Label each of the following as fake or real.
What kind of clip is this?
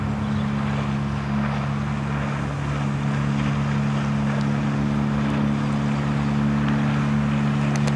real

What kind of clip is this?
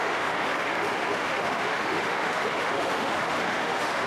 fake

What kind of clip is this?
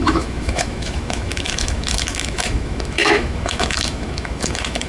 fake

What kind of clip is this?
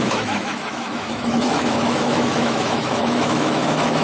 fake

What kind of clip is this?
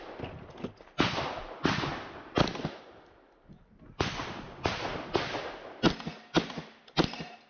real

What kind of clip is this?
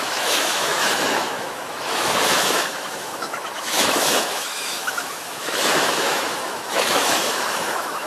fake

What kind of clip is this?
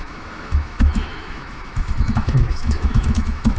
fake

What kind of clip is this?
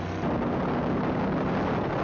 real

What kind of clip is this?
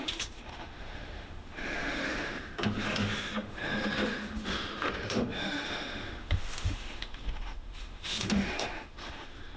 fake